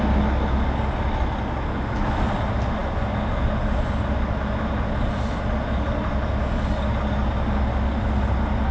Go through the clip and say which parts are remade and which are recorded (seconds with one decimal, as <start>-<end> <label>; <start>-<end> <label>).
0.0-8.7 recorded